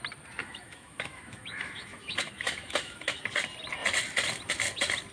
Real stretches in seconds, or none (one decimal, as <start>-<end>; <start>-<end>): 0.0-0.4; 3.2-5.1